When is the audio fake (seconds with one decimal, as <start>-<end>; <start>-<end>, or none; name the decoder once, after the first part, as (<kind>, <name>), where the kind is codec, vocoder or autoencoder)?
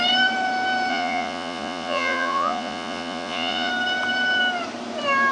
0.9-3.7 (vocoder, Vocos)